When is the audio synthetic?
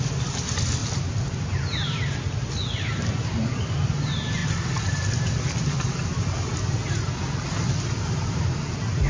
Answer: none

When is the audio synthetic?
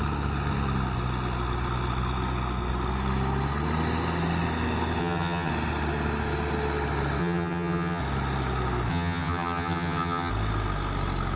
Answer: 5.0-5.5 (vocoder, HiFi-GAN); 7.2-8.0; 8.9-10.3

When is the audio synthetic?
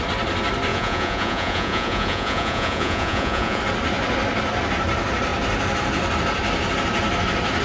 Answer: 0.7-3.6 (vocoder, Vocos)